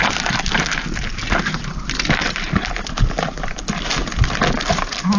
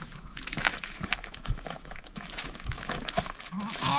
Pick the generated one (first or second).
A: second